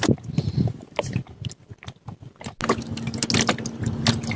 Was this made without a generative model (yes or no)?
yes